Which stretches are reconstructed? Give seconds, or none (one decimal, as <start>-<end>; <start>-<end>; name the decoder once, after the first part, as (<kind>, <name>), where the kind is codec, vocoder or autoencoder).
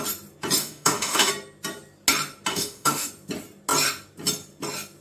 0.6-1.3 (autoencoder, DAC-VAE); 2.5-3.1